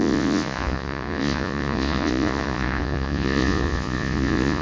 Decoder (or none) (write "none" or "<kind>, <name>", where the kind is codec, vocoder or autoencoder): vocoder, Vocos